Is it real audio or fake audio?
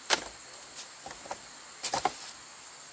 real